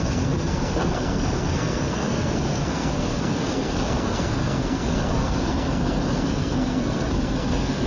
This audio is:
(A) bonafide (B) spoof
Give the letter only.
B